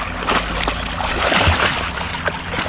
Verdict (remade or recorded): recorded